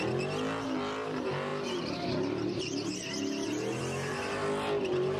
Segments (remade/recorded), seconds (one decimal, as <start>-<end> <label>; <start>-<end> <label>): 0.0-5.2 recorded